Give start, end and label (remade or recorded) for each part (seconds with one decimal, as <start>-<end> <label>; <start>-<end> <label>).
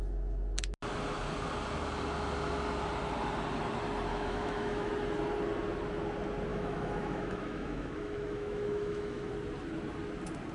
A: 0.0-4.1 recorded; 4.1-4.9 remade; 4.9-6.5 recorded; 6.5-9.3 remade; 9.3-10.5 recorded